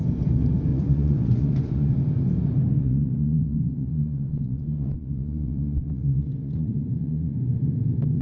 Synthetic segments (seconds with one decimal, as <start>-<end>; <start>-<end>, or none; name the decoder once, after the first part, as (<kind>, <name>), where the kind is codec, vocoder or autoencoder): 0.7-1.9 (vocoder, Vocos); 2.7-7.5